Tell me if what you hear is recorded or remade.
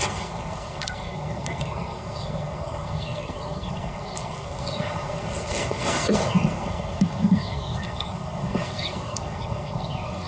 remade